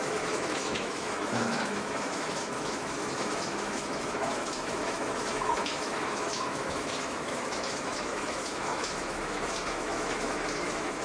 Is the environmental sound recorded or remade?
remade